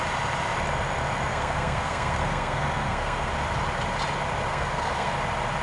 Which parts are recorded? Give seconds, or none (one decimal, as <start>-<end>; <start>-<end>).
0.0-1.3; 3.3-4.5; 5.1-5.6